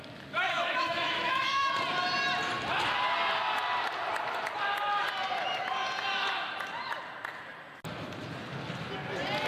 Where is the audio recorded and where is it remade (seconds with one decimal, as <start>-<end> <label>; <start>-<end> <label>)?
0.0-0.5 recorded; 0.5-1.7 remade; 1.7-9.5 recorded